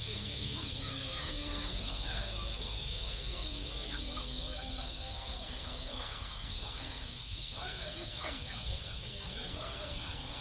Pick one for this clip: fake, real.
fake